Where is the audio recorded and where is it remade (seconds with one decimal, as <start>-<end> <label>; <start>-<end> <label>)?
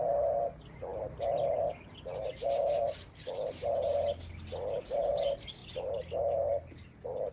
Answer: 0.0-7.3 recorded